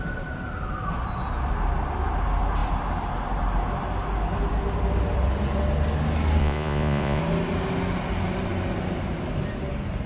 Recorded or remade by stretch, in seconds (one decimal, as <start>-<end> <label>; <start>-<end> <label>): 0.0-6.4 recorded; 6.4-7.2 remade; 7.2-10.1 recorded